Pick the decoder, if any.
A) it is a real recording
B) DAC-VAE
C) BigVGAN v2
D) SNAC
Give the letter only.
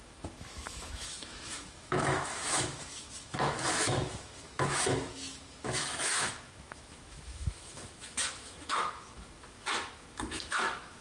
B